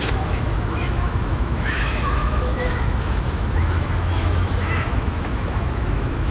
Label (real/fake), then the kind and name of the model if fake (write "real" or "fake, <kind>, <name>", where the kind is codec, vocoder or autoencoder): fake, autoencoder, DAC-VAE